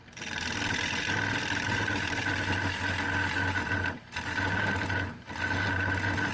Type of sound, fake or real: real